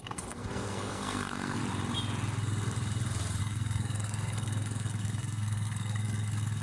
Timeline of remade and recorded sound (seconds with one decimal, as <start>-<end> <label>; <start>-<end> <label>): 0.0-1.6 remade; 1.6-3.4 recorded; 3.4-6.6 remade